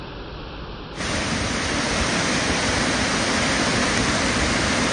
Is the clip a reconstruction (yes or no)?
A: no